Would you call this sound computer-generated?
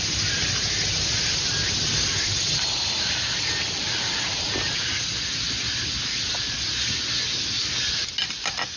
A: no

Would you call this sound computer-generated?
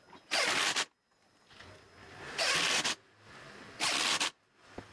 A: no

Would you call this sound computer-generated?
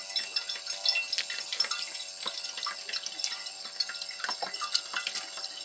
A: no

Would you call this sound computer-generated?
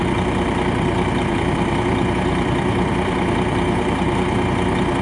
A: yes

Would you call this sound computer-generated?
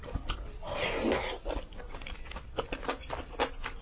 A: no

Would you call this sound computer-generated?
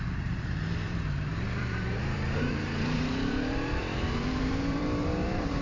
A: yes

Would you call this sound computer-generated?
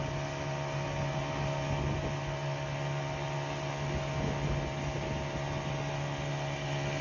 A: no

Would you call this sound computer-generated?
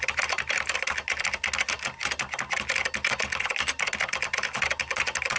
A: no